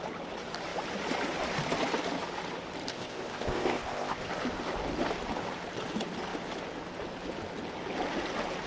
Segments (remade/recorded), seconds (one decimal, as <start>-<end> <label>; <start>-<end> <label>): 0.0-2.9 recorded; 2.9-4.3 remade; 4.3-8.7 recorded